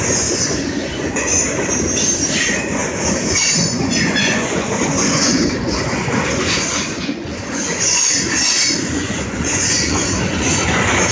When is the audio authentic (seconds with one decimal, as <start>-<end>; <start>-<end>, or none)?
1.3-2.4